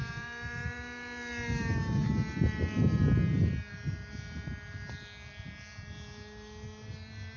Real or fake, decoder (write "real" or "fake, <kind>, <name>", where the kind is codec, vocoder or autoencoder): real